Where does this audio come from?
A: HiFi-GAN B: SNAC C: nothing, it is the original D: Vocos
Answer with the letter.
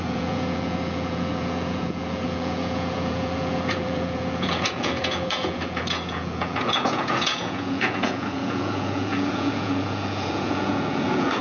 D